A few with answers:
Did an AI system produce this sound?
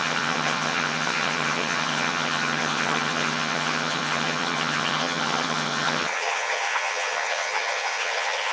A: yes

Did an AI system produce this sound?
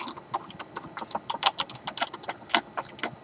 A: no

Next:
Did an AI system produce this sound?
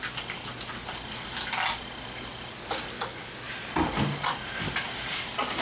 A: no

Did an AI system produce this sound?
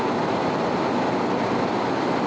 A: no